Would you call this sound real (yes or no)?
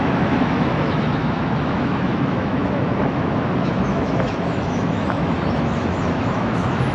no